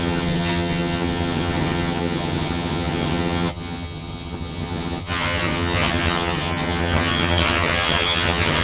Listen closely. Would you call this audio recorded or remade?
remade